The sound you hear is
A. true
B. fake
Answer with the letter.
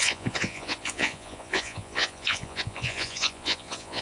B